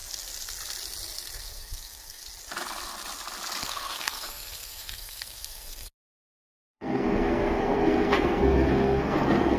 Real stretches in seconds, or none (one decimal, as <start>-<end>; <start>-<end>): 0.0-1.4; 2.2-3.6